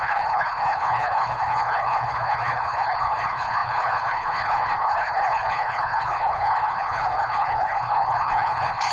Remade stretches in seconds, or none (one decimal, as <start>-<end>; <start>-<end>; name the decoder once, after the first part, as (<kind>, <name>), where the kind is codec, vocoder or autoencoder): 0.0-8.9 (codec, HILCodec)